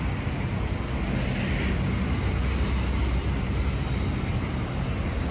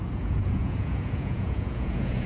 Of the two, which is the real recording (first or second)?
first